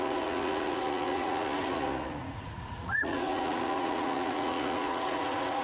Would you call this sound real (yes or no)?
no